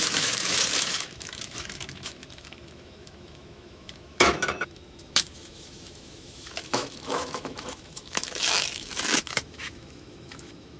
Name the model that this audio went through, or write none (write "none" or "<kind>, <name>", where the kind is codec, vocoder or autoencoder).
autoencoder, DAC-VAE